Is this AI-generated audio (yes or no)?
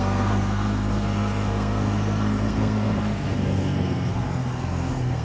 yes